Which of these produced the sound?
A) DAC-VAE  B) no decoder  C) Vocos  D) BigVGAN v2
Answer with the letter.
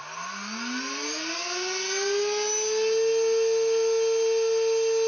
B